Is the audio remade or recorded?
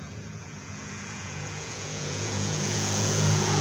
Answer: remade